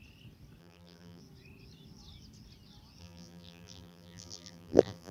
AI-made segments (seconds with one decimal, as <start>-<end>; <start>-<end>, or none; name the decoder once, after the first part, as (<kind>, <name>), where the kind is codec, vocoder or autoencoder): 0.6-1.2 (vocoder, BigVGAN v2); 3.0-5.1